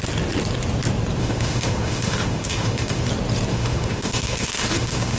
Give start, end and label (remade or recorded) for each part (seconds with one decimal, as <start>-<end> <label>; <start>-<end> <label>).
0.0-1.2 recorded; 1.2-3.1 remade; 3.1-3.5 recorded; 3.5-5.2 remade